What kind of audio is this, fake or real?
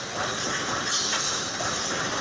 real